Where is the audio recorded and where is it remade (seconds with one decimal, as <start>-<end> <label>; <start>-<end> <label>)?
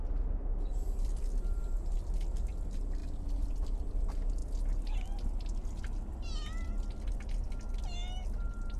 0.0-0.5 recorded; 0.5-1.6 remade; 1.6-3.0 recorded; 3.0-3.8 remade; 3.8-8.8 recorded